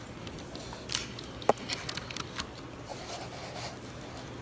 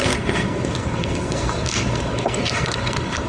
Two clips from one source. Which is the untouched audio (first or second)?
first